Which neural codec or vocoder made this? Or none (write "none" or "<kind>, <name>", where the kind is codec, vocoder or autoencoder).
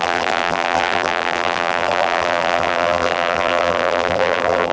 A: vocoder, BigVGAN v2